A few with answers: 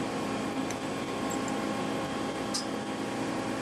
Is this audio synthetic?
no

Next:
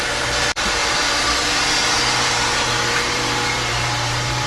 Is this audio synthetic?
yes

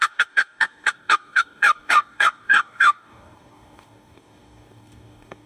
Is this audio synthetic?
yes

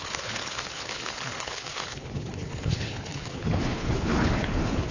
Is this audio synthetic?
yes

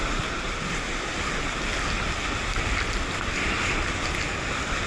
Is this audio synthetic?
no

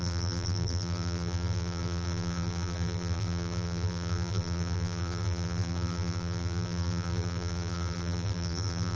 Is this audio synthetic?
yes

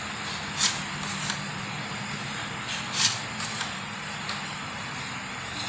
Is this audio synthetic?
no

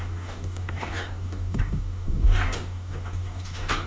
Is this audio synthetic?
yes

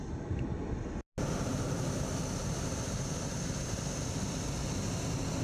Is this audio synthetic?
no